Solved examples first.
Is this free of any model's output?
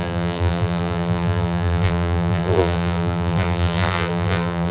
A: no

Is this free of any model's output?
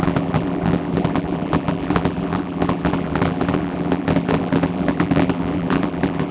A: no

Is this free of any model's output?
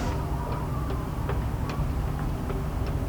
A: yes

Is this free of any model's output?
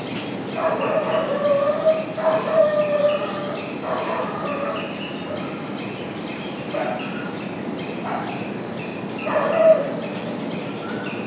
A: yes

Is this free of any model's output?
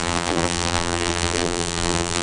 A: no